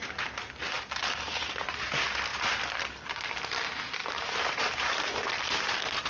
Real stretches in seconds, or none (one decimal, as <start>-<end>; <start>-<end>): 0.0-2.3; 2.8-4.0; 5.3-6.1